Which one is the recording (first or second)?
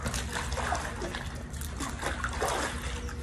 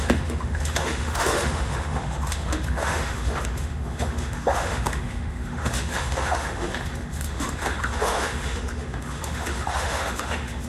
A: first